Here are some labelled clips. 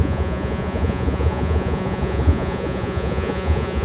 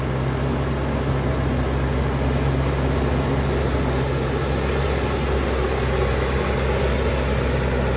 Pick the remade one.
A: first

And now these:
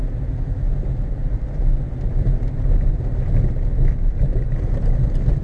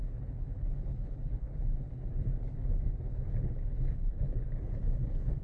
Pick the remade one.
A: second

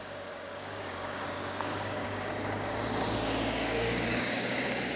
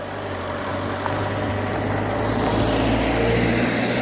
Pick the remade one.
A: first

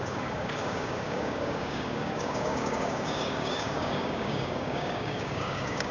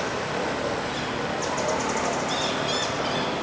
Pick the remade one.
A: first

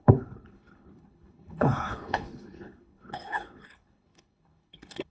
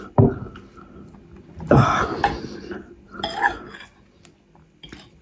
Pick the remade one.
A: first